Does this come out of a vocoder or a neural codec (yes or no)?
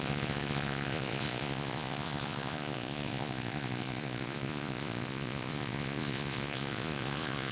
yes